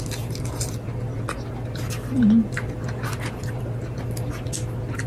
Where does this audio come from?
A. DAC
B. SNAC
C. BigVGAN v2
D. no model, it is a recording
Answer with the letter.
D